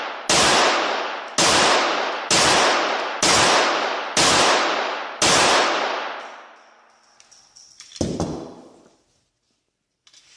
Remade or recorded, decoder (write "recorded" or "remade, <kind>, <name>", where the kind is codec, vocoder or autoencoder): recorded